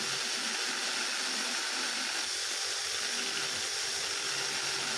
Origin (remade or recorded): recorded